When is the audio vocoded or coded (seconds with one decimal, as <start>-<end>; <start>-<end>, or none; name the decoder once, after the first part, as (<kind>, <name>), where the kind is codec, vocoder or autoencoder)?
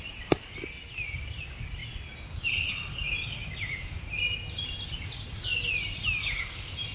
none